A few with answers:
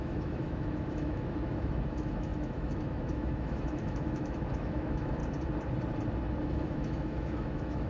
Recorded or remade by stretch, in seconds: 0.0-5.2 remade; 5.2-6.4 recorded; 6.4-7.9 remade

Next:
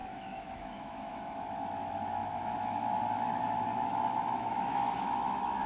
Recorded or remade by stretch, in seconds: 0.0-5.7 remade

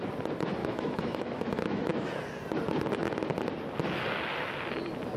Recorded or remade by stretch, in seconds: 0.0-0.6 recorded; 0.6-2.1 remade; 2.1-5.2 recorded

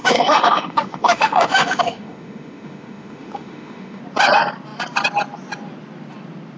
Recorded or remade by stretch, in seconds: 0.0-4.0 remade; 4.0-6.6 recorded

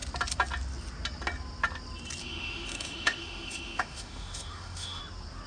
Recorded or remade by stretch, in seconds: 0.0-2.2 recorded; 2.2-5.0 remade; 5.0-5.5 recorded

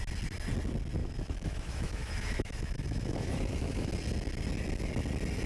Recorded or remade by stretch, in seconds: 0.0-1.0 recorded; 1.0-3.9 remade; 3.9-5.5 recorded